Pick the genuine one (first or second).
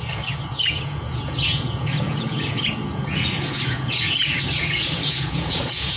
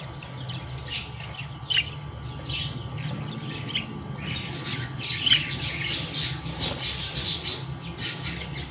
second